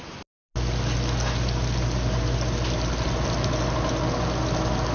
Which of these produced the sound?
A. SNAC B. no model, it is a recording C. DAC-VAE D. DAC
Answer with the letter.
B